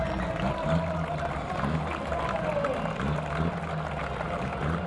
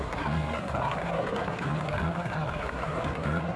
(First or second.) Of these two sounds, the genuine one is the first